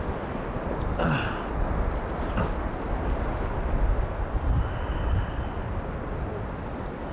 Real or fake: real